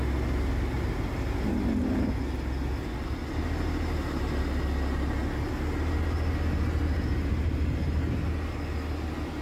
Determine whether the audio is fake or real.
real